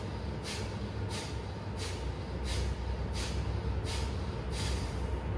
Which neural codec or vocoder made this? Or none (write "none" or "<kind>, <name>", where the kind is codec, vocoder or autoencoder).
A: none